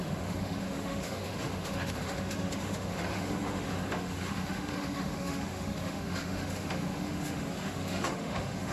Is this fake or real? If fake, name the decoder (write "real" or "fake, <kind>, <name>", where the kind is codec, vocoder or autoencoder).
fake, autoencoder, DAC-VAE